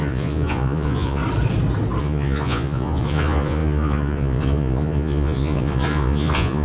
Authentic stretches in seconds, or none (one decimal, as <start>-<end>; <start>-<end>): 1.2-2.0